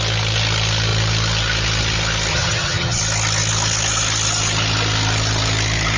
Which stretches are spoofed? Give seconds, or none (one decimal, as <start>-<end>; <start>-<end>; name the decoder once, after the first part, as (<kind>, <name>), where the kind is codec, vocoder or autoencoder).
2.3-3.0 (vocoder, HiFi-GAN)